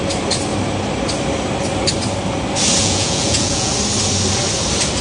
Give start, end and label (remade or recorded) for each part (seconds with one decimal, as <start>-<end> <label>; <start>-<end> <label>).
0.0-2.8 recorded; 2.8-3.7 remade; 3.7-5.0 recorded